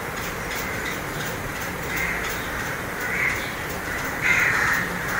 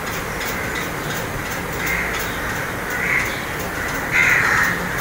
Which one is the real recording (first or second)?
second